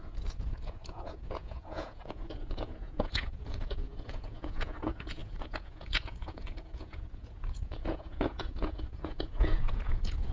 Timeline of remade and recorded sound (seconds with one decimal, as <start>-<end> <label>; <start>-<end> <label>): 0.0-10.3 remade